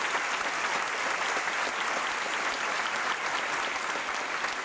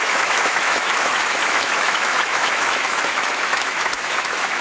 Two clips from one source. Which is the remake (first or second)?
second